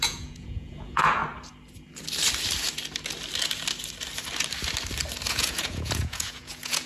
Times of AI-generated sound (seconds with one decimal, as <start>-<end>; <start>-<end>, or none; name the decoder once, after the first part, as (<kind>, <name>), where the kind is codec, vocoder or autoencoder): 0.0-1.2 (vocoder, Vocos); 5.3-6.9